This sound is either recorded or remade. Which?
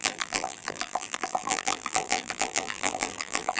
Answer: remade